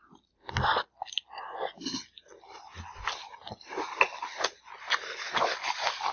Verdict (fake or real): real